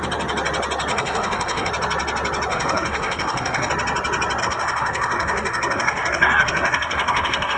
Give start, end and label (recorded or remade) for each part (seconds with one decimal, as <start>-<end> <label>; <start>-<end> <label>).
0.0-0.9 recorded; 0.9-1.7 remade; 1.7-2.5 recorded; 2.5-3.7 remade; 3.7-4.4 recorded; 4.4-7.6 remade